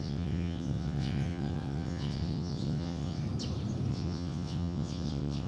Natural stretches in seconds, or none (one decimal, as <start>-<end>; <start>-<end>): 3.2-3.9